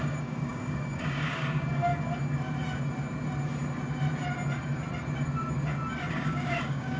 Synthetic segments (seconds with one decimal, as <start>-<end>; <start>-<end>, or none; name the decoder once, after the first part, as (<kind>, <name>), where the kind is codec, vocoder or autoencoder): 0.0-1.9 (codec, DAC); 6.1-7.0

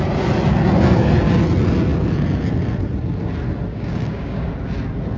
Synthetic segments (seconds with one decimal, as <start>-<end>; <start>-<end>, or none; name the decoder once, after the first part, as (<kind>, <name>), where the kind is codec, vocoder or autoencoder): 3.7-4.5 (codec, DAC)